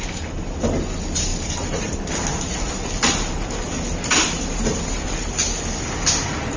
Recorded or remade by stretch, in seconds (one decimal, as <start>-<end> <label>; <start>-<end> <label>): 0.0-1.3 recorded; 1.3-5.3 remade; 5.3-6.6 recorded

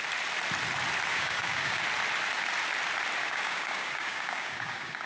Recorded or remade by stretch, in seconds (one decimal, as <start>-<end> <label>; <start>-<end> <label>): 0.0-1.1 recorded; 1.1-1.8 remade; 1.8-3.2 recorded; 3.2-5.1 remade